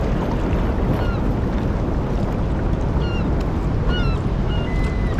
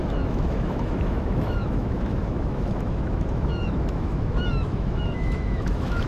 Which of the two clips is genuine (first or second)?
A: first